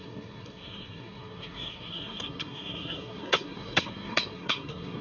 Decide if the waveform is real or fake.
fake